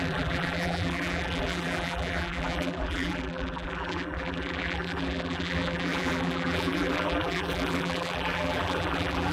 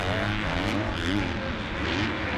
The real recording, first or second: second